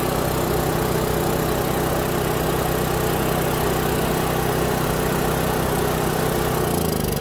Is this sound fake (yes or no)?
no